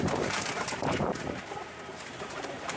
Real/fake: fake